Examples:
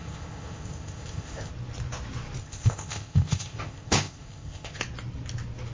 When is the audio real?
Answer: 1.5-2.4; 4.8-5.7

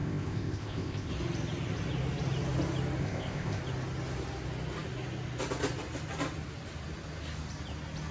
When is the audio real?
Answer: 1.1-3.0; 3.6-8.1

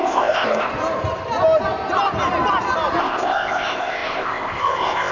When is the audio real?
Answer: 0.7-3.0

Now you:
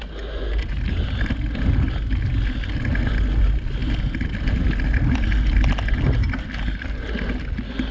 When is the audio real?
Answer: 0.0-7.9

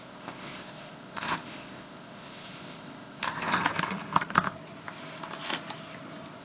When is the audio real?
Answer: 3.6-6.4

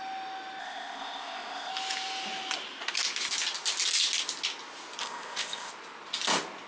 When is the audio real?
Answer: 0.0-0.6; 1.7-5.0; 5.7-6.7

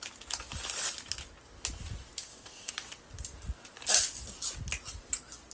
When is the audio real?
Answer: 0.0-2.2; 2.7-5.5

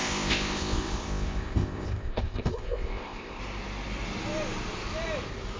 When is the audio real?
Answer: 3.4-5.6